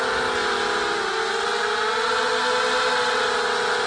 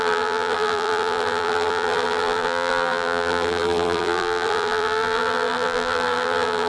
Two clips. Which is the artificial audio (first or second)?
second